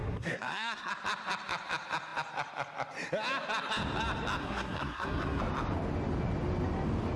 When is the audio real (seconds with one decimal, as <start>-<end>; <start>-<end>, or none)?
0.9-4.4; 5.4-7.2

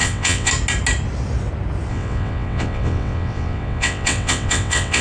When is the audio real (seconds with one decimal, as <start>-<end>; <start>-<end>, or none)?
0.5-1.9

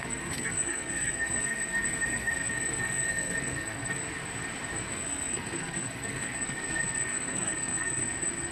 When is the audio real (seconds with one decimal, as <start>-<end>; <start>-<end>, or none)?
4.0-4.9; 8.0-8.5

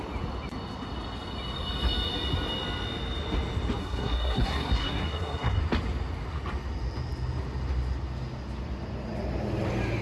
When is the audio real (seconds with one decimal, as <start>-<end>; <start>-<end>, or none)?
0.0-3.8; 5.6-10.0

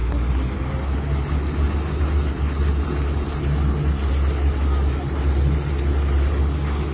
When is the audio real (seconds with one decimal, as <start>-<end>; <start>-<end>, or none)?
0.0-6.9